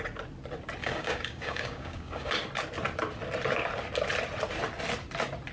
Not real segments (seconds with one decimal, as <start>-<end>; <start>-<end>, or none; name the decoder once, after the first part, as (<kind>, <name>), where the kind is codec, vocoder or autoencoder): 0.8-2.3 (codec, DAC)